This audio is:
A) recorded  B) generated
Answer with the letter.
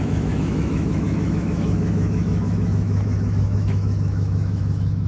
B